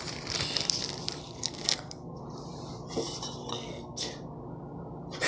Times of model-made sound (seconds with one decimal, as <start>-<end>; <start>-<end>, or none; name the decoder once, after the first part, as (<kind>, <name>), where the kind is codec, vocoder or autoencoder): 1.2-2.2 (codec, SNAC); 3.5-4.1